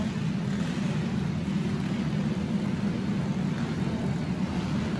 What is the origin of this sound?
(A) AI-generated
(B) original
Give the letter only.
B